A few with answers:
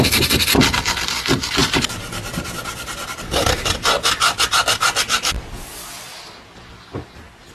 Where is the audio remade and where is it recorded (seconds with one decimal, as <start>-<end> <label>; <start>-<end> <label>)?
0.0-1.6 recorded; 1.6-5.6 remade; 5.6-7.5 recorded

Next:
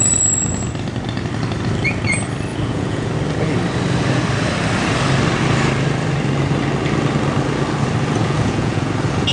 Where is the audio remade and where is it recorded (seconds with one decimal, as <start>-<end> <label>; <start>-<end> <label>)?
0.0-2.5 recorded; 2.5-3.1 remade; 3.1-8.2 recorded; 8.2-8.9 remade; 8.9-9.3 recorded

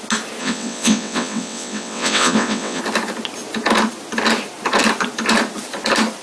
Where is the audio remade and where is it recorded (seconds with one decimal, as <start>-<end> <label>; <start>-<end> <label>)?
0.0-0.4 recorded; 0.4-2.8 remade; 2.8-6.2 recorded

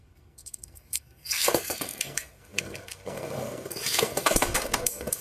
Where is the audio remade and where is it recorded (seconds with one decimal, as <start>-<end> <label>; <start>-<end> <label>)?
0.0-5.2 remade

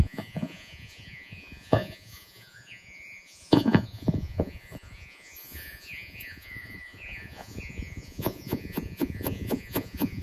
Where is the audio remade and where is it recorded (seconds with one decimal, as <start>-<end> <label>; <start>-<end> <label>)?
0.0-10.2 remade